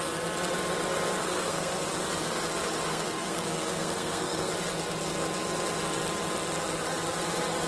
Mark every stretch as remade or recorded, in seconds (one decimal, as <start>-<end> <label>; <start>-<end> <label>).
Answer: 0.0-1.2 recorded; 1.2-1.7 remade; 1.7-2.9 recorded; 2.9-4.5 remade; 4.5-7.7 recorded